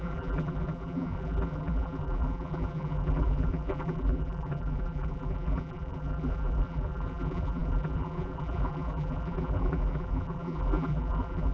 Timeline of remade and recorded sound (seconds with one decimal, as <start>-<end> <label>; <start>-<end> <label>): 0.0-11.5 remade